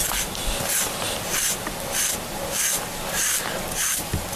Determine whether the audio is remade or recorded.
recorded